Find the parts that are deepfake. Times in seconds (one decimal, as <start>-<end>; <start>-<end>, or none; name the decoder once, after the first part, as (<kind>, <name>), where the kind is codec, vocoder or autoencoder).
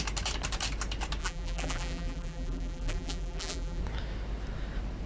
1.2-3.8 (vocoder, BigVGAN v2)